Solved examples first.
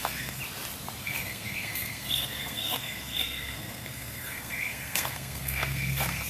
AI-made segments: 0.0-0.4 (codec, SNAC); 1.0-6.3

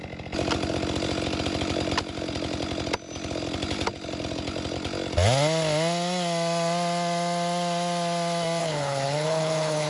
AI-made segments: 8.6-9.9 (codec, HILCodec)

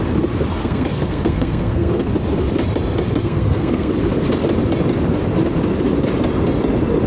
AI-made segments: 0.5-2.1 (codec, SNAC); 3.2-3.9